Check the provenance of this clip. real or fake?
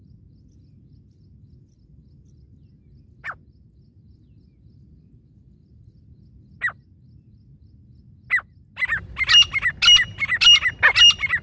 real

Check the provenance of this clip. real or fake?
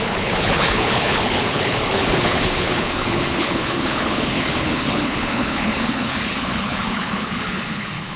fake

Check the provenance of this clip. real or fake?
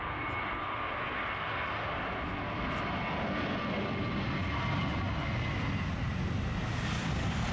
real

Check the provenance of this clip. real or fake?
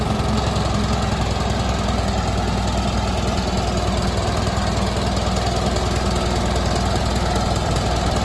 real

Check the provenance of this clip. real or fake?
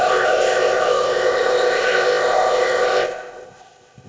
fake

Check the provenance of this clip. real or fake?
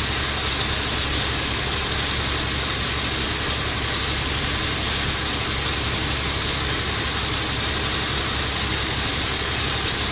real